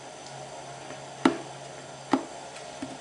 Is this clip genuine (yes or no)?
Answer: yes